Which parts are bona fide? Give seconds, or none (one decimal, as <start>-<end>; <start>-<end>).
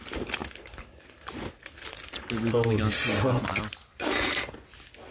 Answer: 0.0-5.1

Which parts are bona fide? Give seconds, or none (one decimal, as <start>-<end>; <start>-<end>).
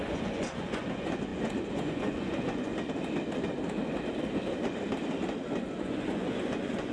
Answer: 2.7-5.6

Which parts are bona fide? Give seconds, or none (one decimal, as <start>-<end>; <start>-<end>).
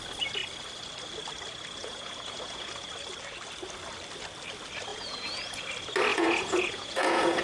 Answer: 0.0-1.8; 2.9-4.9; 5.6-6.1